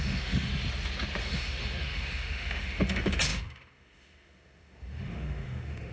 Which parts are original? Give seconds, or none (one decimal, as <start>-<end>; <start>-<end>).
0.5-1.2